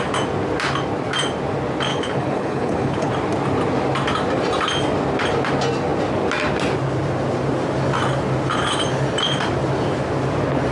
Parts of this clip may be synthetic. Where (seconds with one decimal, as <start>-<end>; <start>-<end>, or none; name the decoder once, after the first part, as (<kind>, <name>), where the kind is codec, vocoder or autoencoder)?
1.9-3.1 (codec, HILCodec)